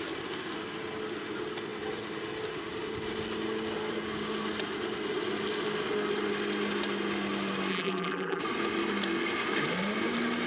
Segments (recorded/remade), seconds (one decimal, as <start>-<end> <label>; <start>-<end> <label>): 0.0-7.7 recorded; 7.7-8.4 remade; 8.4-10.5 recorded